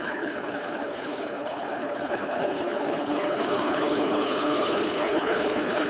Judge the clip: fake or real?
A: fake